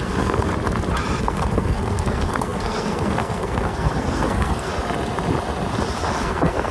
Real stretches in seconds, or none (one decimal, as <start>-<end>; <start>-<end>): 0.5-1.2; 4.7-6.1